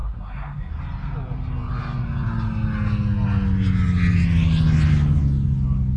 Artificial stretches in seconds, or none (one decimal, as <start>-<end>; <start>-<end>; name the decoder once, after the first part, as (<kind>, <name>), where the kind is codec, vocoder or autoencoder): 0.0-0.8 (codec, SNAC)